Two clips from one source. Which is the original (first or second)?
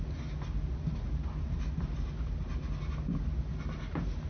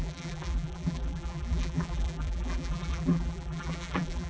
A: first